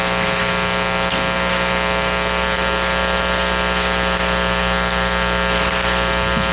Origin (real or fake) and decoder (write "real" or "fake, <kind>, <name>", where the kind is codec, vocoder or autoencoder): real